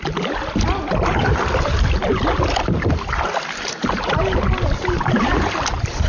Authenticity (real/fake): real